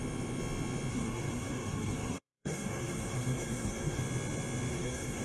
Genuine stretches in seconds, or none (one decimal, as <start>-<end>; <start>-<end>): 0.0-0.9; 4.0-4.7

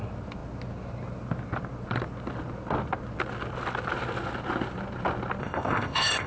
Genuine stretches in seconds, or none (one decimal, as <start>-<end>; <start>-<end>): 0.0-5.4

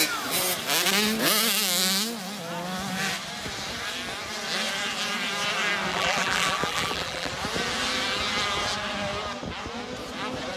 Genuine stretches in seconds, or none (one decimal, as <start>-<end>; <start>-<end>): 0.0-5.9; 7.3-10.6

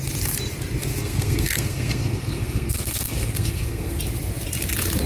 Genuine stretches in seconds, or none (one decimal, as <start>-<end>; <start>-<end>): 0.0-0.9; 4.0-5.1

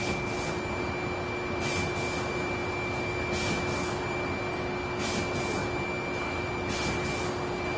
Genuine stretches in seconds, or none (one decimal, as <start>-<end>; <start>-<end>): 0.0-7.8